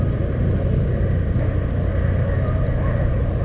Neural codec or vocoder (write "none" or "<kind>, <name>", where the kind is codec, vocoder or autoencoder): none